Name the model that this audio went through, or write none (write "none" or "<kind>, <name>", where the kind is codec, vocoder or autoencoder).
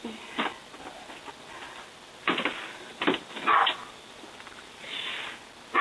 none